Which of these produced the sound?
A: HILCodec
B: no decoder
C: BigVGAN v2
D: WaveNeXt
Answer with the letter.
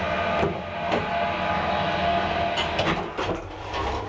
B